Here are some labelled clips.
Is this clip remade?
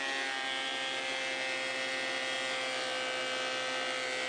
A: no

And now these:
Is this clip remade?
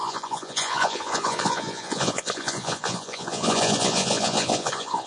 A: yes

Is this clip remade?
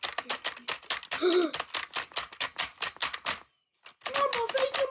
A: no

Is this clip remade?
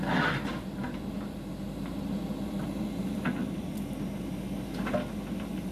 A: no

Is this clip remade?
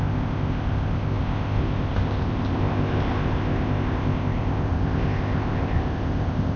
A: yes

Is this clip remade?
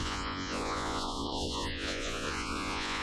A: yes